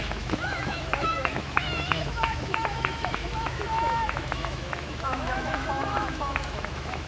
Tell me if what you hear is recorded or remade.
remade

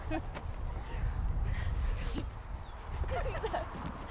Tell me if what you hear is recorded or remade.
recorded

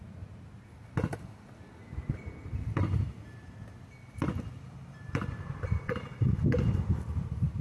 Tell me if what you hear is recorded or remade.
recorded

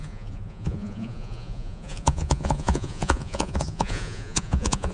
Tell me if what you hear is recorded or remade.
remade